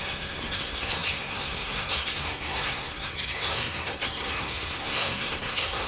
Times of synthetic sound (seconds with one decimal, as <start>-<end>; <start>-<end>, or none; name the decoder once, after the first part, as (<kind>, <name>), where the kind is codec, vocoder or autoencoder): 0.0-5.9 (codec, SNAC)